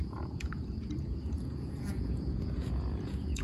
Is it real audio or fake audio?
fake